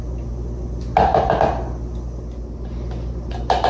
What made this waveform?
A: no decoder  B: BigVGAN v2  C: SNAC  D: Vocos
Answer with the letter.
A